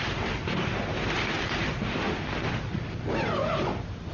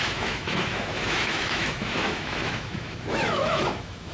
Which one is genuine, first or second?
first